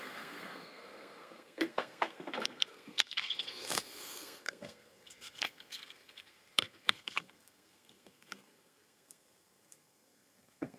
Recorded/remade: remade